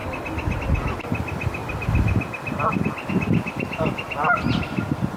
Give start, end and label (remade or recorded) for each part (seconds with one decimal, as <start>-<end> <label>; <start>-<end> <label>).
0.0-5.2 recorded